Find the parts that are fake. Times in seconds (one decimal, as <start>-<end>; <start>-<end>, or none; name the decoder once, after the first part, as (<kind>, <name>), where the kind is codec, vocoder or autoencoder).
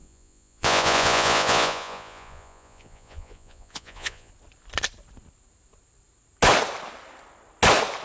0.0-4.3 (vocoder, Vocos)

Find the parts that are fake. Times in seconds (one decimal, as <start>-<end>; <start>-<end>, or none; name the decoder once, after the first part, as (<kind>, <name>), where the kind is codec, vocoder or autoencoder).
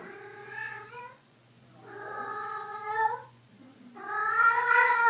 0.4-3.5 (vocoder, Vocos); 4.2-5.1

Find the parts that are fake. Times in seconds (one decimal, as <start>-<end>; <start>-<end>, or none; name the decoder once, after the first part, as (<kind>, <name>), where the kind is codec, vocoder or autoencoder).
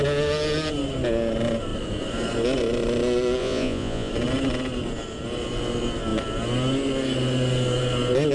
3.4-4.1 (vocoder, Vocos)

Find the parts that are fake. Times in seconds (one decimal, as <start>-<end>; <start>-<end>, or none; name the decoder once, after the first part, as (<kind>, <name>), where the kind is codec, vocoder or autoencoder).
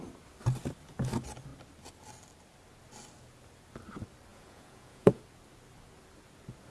4.3-5.2 (vocoder, Vocos)